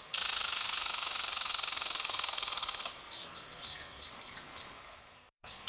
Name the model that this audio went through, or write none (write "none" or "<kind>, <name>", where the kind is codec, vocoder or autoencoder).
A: codec, SNAC